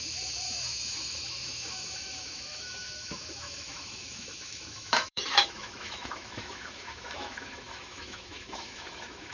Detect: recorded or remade remade